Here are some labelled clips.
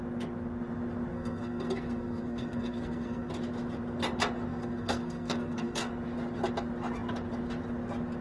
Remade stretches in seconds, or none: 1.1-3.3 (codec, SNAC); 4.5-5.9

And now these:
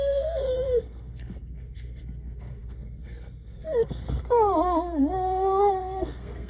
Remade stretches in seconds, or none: 0.0-6.5 (codec, SNAC)

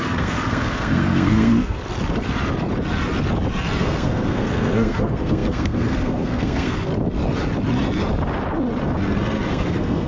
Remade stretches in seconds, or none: 0.0-1.8 (codec, SNAC); 3.8-6.9; 9.5-10.1

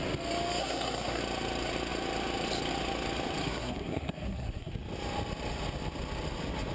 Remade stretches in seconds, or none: 0.6-1.2 (codec, SNAC); 3.4-4.7

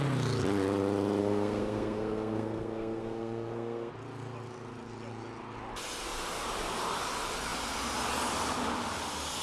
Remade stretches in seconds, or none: 1.2-3.9 (codec, SNAC)

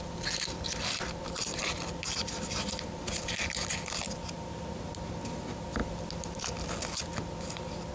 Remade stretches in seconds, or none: none